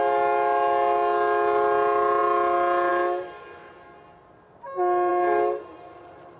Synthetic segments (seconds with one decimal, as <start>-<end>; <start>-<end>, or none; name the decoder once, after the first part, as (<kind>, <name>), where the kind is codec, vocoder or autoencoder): none